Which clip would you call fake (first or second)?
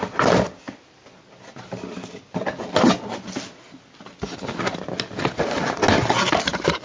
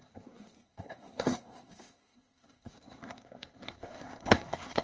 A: second